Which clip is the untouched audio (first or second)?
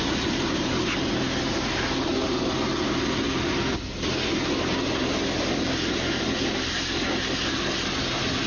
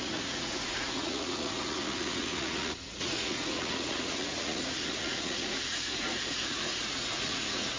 first